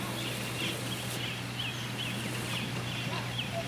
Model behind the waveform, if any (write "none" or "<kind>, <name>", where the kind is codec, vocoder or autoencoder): none